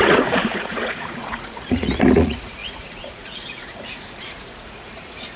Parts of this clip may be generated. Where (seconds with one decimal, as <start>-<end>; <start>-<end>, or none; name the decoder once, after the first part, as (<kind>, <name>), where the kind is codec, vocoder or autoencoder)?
0.0-5.4 (vocoder, Vocos)